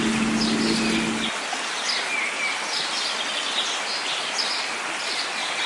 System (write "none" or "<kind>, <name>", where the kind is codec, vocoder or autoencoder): none